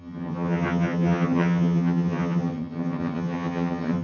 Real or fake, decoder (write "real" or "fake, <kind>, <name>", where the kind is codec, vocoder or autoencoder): fake, vocoder, HiFi-GAN